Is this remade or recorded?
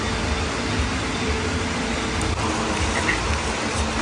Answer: recorded